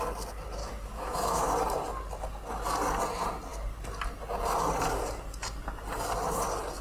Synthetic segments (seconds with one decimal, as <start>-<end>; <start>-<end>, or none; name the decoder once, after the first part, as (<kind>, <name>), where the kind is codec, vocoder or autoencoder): 0.6-1.5 (autoencoder, DAC-VAE)